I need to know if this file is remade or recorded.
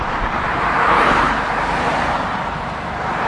remade